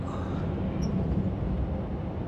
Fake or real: real